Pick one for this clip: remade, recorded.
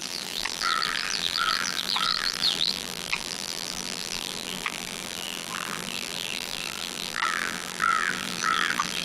remade